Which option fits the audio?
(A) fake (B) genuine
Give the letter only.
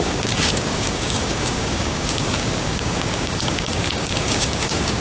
A